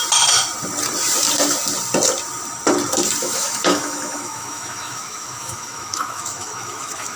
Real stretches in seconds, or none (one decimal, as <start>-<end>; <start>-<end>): 0.0-3.2

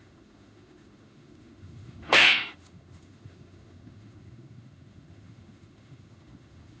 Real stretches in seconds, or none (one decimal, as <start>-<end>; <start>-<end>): none

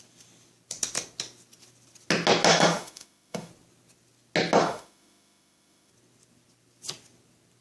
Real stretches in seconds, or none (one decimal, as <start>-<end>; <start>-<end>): 0.0-2.5; 3.5-4.6; 5.9-7.6

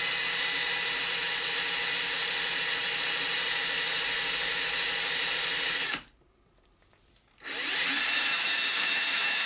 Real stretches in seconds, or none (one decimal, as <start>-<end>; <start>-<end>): 0.0-8.3